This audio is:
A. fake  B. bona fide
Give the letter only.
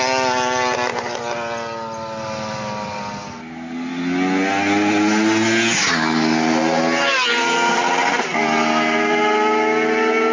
B